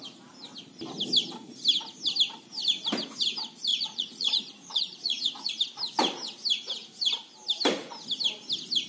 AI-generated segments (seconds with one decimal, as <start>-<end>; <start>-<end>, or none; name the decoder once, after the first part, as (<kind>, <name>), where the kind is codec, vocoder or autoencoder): 3.7-5.5 (vocoder, Vocos)